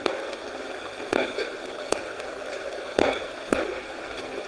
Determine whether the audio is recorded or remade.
remade